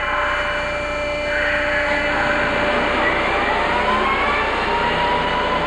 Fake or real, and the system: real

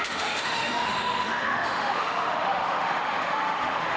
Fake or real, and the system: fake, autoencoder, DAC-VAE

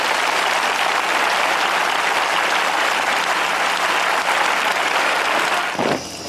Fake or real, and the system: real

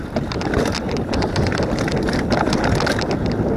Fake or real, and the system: real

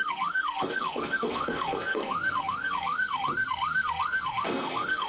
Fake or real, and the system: fake, codec, SNAC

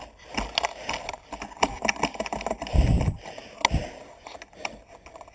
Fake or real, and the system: real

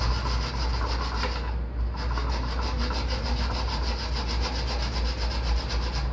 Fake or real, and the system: real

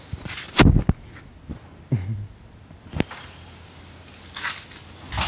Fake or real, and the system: real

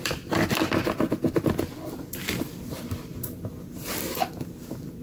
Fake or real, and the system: fake, vocoder, BigVGAN v2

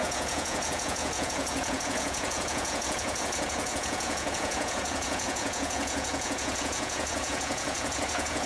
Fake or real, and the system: fake, vocoder, Vocos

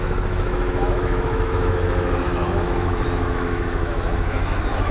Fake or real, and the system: fake, autoencoder, DAC-VAE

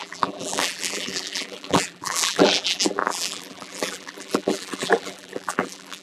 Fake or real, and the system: fake, vocoder, BigVGAN v2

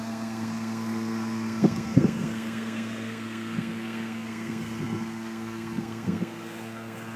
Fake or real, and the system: fake, codec, SNAC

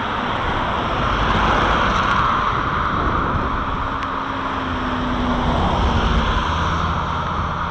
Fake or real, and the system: real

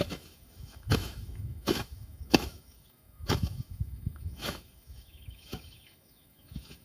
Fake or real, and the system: fake, autoencoder, DAC-VAE